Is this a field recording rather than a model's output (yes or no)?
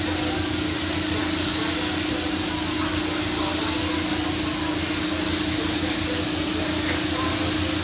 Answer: yes